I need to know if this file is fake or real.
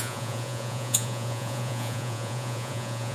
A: fake